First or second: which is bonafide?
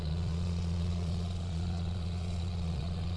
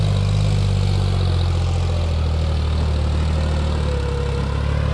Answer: second